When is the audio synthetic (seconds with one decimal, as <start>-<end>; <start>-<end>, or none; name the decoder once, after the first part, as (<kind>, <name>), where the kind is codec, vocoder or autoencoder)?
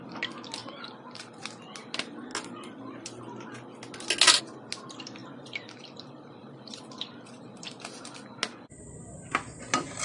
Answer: 0.6-1.4 (vocoder, BigVGAN v2); 5.2-6.8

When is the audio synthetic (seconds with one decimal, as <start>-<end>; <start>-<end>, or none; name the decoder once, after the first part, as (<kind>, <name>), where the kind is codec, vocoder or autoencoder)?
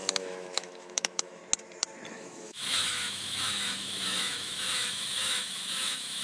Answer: 0.0-1.4 (autoencoder, DAC-VAE); 2.1-6.2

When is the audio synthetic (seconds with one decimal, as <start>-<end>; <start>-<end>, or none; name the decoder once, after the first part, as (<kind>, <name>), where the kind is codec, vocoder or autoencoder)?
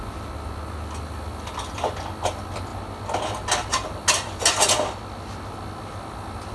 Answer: none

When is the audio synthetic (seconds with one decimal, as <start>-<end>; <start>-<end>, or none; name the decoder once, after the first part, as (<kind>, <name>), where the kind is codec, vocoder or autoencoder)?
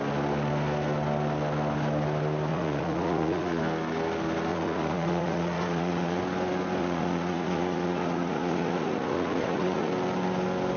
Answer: 2.5-3.6 (vocoder, Vocos); 4.5-6.2; 6.8-9.9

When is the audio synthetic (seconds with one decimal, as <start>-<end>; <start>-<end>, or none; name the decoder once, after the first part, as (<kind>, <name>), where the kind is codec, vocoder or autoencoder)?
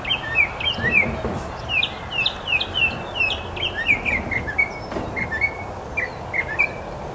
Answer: none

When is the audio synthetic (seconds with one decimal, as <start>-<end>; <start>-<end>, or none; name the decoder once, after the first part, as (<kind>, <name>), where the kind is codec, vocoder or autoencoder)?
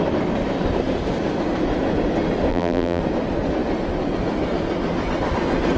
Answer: 2.5-3.0 (vocoder, BigVGAN v2)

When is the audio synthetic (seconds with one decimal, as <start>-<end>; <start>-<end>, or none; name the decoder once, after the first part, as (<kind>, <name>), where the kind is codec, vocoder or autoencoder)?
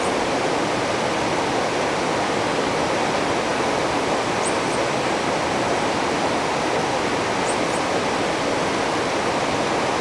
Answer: none